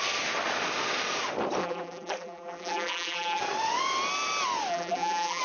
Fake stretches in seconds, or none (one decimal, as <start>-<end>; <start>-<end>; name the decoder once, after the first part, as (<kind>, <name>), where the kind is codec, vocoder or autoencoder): 1.6-3.4 (vocoder, BigVGAN v2); 4.7-5.4